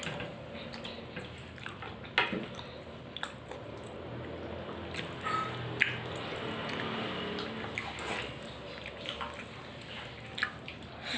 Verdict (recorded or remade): recorded